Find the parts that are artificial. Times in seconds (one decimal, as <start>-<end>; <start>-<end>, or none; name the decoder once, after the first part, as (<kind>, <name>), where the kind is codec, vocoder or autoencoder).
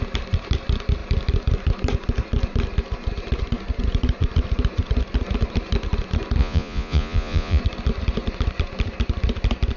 6.4-7.6 (vocoder, Vocos)